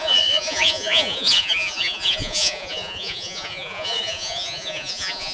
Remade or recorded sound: remade